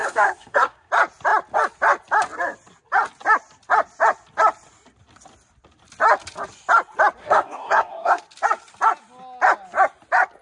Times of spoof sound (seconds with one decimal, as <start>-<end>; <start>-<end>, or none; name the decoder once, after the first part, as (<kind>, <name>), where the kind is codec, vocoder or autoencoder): 0.0-0.9 (codec, SNAC); 7.2-8.2